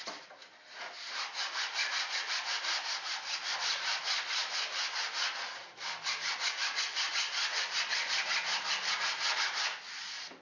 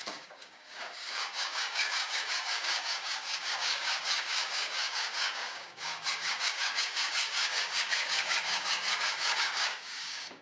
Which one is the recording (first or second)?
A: first